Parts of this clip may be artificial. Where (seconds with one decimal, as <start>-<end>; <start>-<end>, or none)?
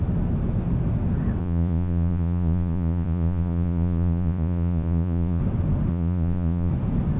1.4-5.4; 5.9-6.7